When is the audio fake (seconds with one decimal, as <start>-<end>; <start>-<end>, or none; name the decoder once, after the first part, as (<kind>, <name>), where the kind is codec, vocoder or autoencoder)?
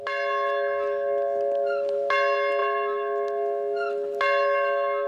none